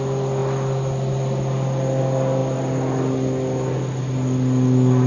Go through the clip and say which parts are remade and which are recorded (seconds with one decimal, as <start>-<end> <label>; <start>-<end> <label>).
0.0-5.1 recorded